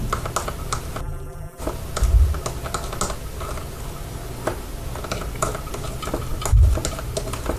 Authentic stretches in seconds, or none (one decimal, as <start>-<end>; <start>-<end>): 0.0-1.0; 1.6-7.6